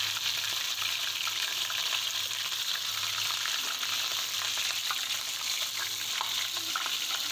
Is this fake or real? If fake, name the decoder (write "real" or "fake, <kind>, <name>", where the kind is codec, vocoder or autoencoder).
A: real